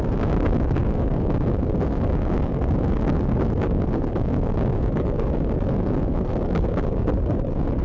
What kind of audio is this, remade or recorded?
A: remade